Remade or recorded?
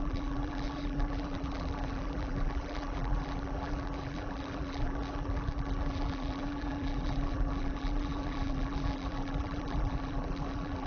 remade